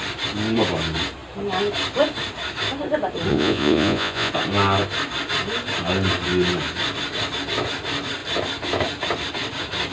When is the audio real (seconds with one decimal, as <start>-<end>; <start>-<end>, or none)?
0.0-3.3; 4.3-9.9